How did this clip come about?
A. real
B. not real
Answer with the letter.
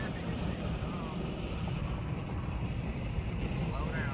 B